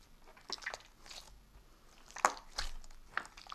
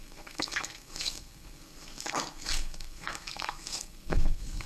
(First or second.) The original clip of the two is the first